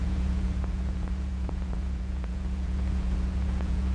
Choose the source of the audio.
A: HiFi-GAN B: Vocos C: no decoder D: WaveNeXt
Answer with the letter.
B